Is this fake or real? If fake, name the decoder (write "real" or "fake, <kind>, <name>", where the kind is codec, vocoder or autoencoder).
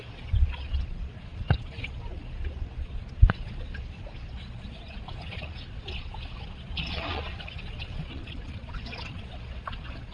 fake, vocoder, Vocos